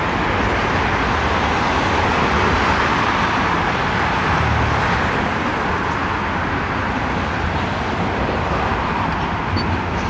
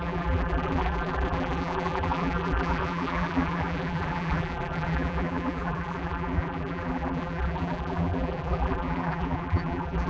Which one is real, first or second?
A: first